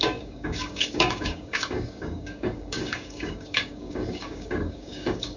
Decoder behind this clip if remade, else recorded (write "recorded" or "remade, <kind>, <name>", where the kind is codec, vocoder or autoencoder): remade, codec, DAC